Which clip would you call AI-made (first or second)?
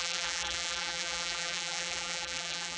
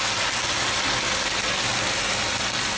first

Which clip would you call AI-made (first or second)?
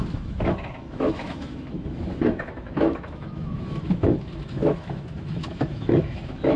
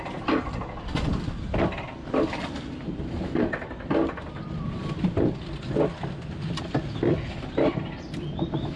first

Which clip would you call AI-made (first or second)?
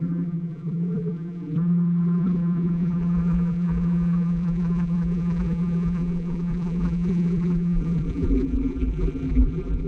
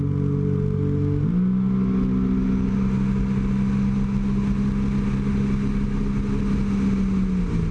first